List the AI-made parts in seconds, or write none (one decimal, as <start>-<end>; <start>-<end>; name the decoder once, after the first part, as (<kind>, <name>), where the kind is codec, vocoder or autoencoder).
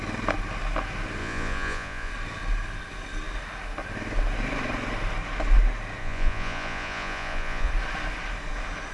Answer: 1.2-2.1 (vocoder, Vocos); 6.0-7.7